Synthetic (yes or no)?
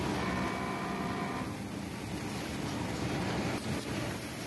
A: no